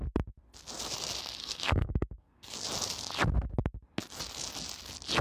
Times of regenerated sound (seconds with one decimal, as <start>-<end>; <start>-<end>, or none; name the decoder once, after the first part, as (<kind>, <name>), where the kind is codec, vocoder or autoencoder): 1.4-2.5 (codec, SNAC)